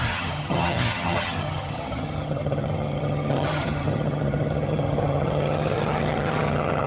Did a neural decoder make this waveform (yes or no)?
yes